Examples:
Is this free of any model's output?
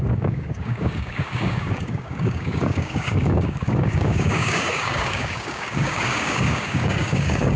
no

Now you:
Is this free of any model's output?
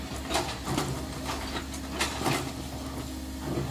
yes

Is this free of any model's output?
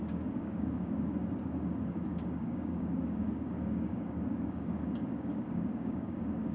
no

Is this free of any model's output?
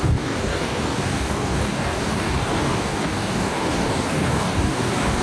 no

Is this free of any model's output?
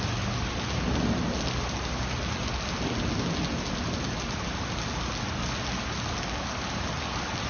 yes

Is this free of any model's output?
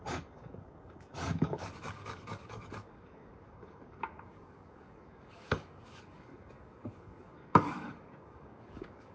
no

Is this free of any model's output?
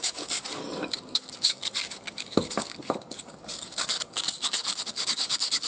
no